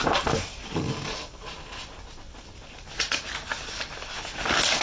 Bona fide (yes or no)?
yes